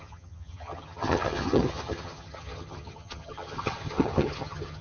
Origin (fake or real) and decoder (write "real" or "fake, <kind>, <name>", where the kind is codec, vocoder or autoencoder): fake, vocoder, HiFi-GAN